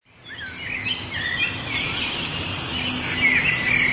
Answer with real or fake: real